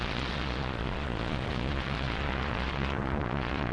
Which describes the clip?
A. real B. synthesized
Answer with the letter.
B